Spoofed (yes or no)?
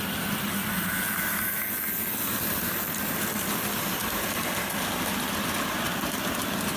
no